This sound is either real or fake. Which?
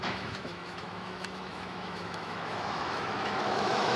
fake